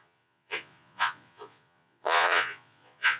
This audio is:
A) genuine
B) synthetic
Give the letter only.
B